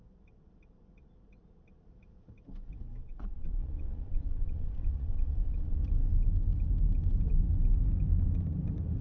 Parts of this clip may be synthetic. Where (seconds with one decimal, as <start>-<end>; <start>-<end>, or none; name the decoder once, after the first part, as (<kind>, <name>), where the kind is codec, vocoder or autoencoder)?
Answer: 3.0-5.8 (vocoder, Vocos)